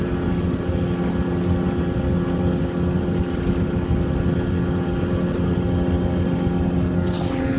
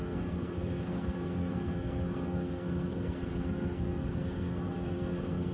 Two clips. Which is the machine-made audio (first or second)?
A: second